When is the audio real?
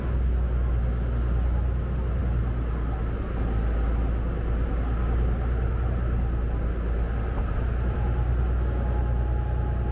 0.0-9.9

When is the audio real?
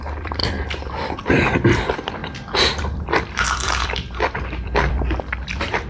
2.2-2.8